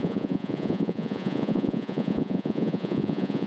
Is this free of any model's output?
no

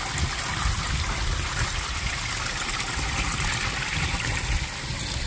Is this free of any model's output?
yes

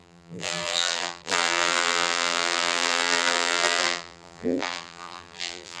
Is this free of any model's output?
no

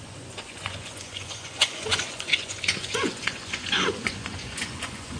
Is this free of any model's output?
no